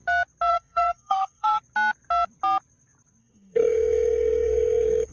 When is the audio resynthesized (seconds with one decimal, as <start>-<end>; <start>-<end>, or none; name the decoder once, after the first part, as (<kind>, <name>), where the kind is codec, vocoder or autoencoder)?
0.5-1.6 (codec, SNAC); 3.2-5.1